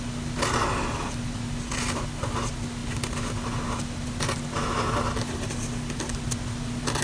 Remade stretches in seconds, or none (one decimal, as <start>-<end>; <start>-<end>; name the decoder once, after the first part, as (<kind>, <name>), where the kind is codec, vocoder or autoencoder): none